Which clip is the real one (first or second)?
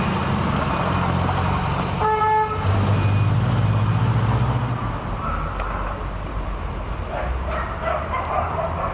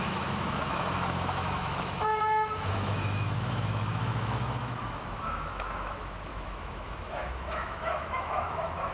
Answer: first